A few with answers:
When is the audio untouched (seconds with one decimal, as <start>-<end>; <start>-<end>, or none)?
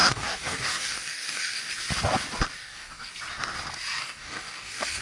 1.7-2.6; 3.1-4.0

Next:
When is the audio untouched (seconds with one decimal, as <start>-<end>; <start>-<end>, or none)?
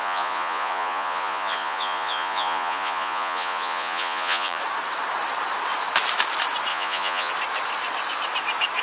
4.6-6.7; 7.3-8.8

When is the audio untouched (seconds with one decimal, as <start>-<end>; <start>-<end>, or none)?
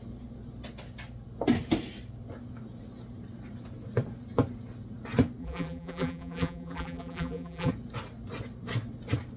0.0-5.4; 7.7-9.4